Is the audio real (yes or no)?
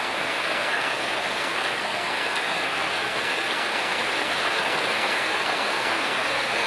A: no